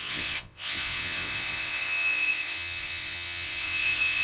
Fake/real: fake